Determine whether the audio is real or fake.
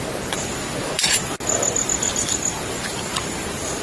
real